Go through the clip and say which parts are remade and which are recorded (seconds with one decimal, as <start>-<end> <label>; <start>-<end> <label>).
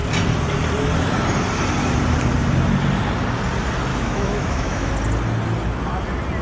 0.0-3.9 recorded; 3.9-4.9 remade; 4.9-6.4 recorded